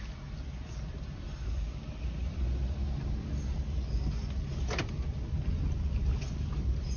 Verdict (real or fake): real